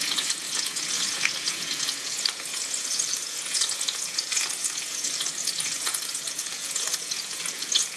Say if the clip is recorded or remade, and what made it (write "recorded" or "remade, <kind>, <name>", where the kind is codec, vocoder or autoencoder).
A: remade, vocoder, Vocos